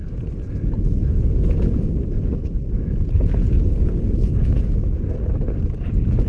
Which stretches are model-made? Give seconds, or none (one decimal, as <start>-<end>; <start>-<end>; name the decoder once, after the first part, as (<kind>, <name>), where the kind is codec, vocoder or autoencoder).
3.8-4.9 (vocoder, Vocos)